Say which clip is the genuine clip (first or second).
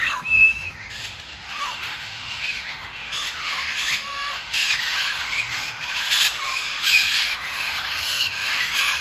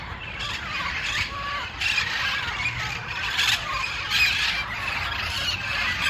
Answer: second